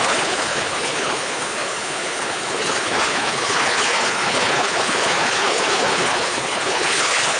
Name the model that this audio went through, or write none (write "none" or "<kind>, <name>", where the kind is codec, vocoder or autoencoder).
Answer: codec, HILCodec